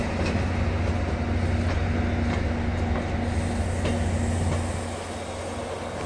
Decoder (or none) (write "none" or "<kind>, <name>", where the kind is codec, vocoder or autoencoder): none